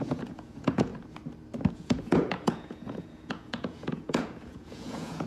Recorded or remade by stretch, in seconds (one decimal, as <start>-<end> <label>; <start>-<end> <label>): 0.0-0.9 remade; 0.9-1.7 recorded; 1.7-5.3 remade